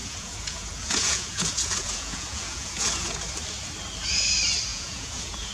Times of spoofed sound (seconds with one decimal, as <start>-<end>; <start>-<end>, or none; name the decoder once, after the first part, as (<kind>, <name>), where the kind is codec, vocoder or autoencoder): 0.0-3.3 (vocoder, Vocos); 4.7-5.5